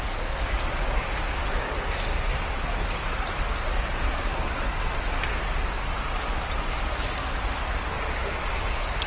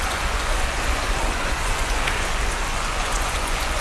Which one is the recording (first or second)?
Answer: first